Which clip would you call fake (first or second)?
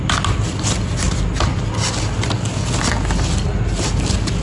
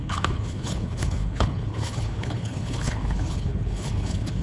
second